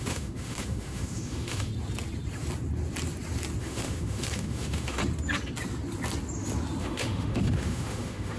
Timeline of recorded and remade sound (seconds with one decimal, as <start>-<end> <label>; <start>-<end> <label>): 0.0-1.7 remade; 1.7-3.6 recorded; 3.6-5.0 remade; 5.0-6.8 recorded; 6.8-8.4 remade